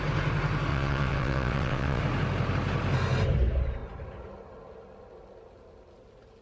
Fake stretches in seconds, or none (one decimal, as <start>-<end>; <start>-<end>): 0.7-2.0